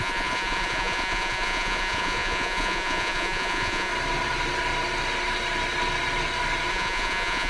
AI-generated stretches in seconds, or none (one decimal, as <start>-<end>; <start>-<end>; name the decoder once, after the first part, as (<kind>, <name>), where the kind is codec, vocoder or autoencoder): 0.0-3.9 (vocoder, Vocos); 6.7-7.5

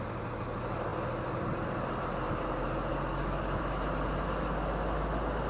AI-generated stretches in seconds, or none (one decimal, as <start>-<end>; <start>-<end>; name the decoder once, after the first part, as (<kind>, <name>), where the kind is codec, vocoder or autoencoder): 2.9-3.6 (codec, DAC)

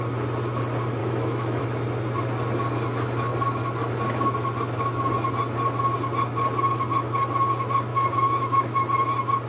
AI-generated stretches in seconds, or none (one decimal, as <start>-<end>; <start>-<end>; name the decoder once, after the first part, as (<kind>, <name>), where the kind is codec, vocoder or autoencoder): 1.0-1.6 (autoencoder, DAC-VAE); 7.9-8.8

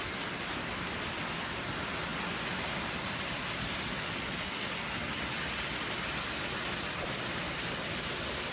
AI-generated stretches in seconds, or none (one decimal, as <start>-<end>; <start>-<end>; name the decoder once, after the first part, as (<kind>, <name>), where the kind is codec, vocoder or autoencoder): none

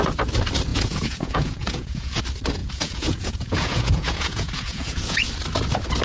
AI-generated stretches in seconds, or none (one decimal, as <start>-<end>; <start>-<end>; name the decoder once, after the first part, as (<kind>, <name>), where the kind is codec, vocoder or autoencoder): 0.7-2.2 (vocoder, Vocos); 2.6-5.3

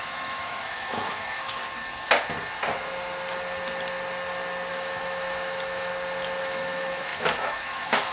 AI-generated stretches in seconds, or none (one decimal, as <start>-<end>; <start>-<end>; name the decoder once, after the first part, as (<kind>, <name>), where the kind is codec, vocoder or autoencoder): 0.0-1.6 (autoencoder, DAC-VAE); 4.7-5.9; 6.4-8.1